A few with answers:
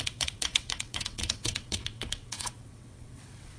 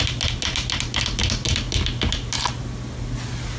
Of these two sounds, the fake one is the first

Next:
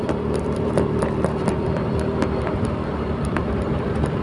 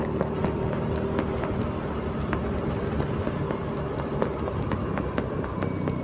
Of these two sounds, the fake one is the first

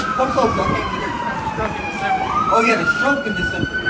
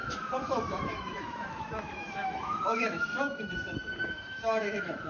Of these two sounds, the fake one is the second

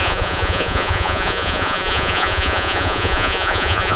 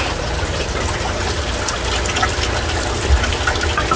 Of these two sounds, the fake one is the first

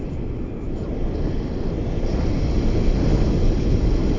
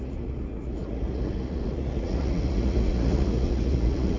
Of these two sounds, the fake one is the second